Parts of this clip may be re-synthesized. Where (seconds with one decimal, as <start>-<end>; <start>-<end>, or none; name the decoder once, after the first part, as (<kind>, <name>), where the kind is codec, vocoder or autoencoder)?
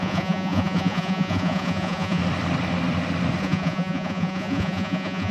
0.0-2.2 (vocoder, Vocos); 3.4-5.3